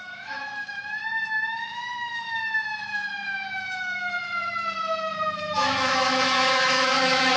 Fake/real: fake